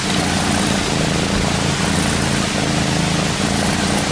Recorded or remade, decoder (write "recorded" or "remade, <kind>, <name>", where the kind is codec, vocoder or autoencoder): recorded